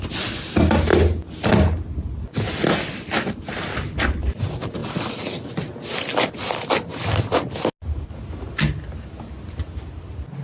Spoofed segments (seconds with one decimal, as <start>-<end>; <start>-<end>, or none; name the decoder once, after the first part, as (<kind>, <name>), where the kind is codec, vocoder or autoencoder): none